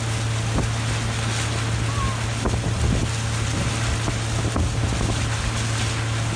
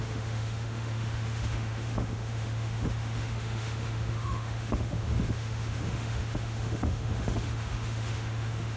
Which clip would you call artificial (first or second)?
second